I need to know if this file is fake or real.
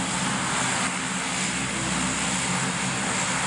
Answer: real